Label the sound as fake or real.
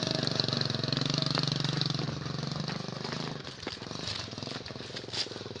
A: real